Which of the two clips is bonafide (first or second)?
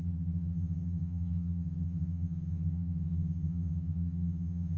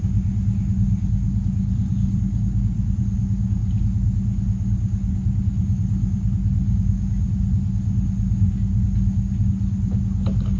second